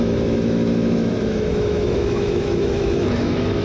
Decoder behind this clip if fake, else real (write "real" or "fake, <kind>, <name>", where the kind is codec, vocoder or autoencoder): fake, autoencoder, DAC-VAE